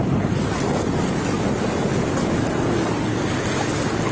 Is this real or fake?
real